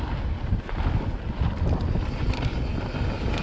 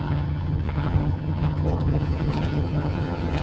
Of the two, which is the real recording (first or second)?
first